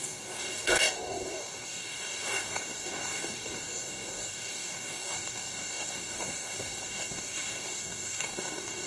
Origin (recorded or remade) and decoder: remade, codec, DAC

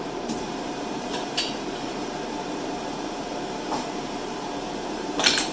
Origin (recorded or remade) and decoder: remade, vocoder, BigVGAN v2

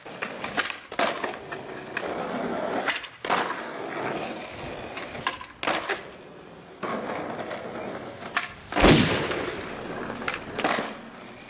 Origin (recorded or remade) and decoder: recorded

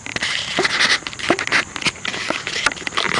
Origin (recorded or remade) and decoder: recorded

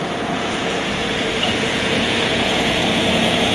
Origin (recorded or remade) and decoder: remade, vocoder, Vocos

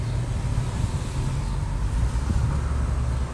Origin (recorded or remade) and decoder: recorded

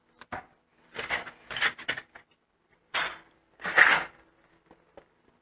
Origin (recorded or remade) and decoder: recorded